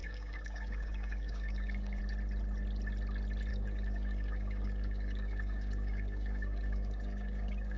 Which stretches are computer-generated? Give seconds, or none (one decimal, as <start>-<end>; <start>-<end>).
0.0-2.0; 3.5-7.8